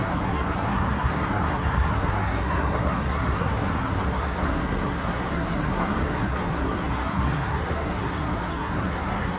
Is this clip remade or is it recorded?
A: remade